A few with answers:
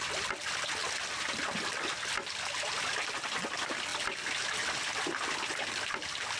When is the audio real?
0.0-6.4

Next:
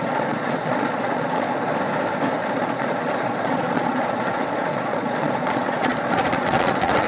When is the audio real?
1.7-2.4